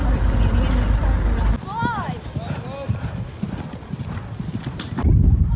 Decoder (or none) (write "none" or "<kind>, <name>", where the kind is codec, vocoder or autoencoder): none